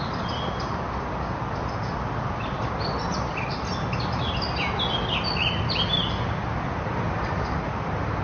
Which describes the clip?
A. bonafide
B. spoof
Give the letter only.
A